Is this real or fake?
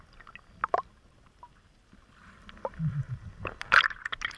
real